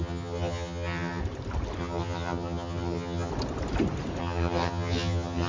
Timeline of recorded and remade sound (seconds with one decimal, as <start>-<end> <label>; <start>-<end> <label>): 0.0-1.2 remade; 1.2-1.8 recorded; 1.8-3.3 remade; 3.3-4.2 recorded; 4.2-5.5 remade